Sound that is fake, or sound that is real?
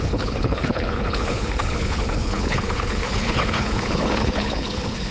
fake